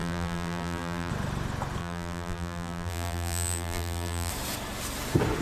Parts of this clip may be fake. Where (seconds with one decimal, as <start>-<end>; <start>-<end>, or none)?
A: 0.0-1.1; 1.8-4.3